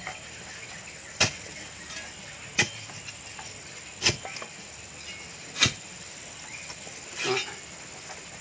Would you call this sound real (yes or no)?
yes